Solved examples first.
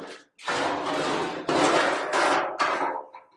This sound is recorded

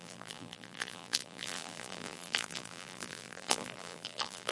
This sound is remade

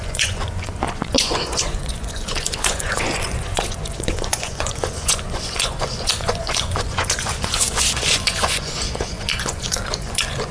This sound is remade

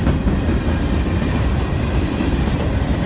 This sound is recorded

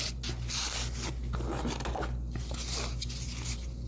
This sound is recorded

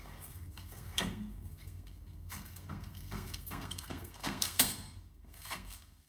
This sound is remade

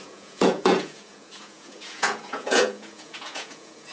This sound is remade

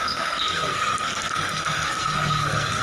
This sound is remade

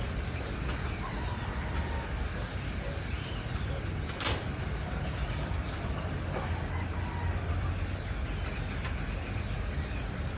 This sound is recorded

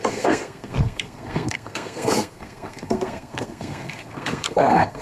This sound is remade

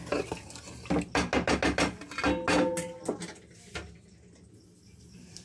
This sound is recorded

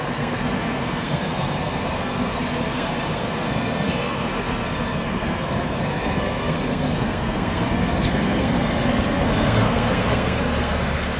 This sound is remade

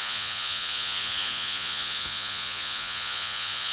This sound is remade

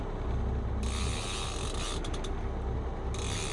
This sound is recorded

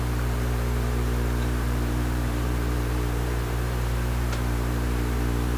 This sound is remade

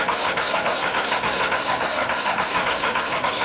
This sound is remade